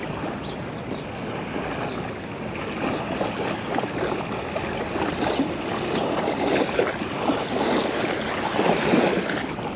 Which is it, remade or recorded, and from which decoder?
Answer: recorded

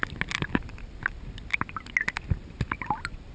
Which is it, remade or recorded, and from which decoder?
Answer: recorded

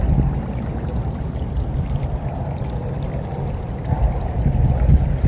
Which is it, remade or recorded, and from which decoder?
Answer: recorded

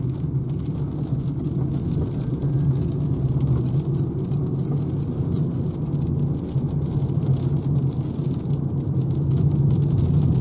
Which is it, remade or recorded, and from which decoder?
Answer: recorded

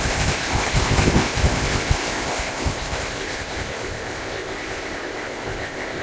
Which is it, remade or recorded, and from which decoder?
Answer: remade, codec, ZipCodec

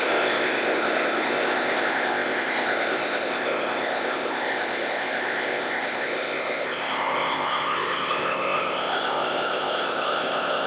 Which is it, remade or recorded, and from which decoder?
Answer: remade, codec, ZipCodec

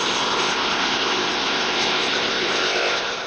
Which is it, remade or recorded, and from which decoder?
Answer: remade, codec, ZipCodec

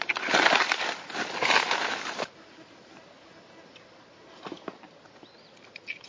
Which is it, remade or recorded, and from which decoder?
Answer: recorded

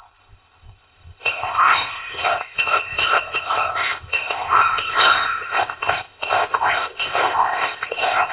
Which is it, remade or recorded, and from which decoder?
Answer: remade, codec, ZipCodec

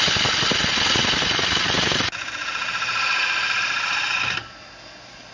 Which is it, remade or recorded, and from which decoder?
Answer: recorded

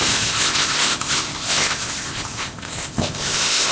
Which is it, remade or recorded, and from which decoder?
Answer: remade, codec, ZipCodec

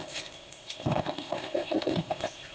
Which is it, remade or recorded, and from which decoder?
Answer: remade, codec, ZipCodec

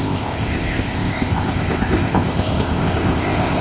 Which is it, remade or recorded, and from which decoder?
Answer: remade, codec, ZipCodec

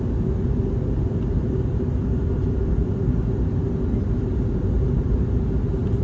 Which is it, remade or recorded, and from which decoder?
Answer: recorded